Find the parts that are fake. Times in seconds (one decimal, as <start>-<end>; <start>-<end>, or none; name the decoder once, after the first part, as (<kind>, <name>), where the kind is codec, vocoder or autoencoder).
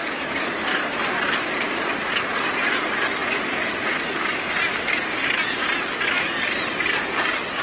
none